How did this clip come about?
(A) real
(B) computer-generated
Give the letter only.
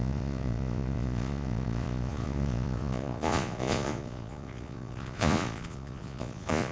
B